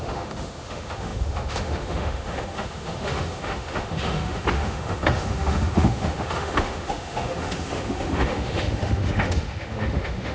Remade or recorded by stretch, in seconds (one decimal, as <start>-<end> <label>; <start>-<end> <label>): 0.0-10.3 remade